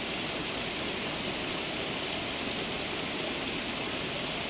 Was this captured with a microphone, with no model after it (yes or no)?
yes